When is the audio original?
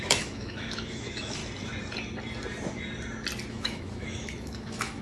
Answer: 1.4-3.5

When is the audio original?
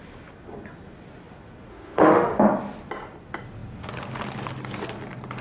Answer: 0.0-1.7; 2.4-5.4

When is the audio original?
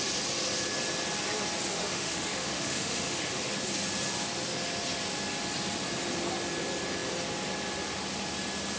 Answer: 0.0-1.7; 3.5-8.8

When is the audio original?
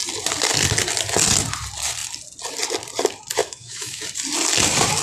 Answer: 0.0-3.4; 4.0-5.0